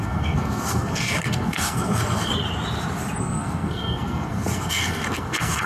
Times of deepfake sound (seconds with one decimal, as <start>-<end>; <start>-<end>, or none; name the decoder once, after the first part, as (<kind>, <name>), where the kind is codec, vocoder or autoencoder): 0.0-2.3 (codec, SNAC); 3.2-5.7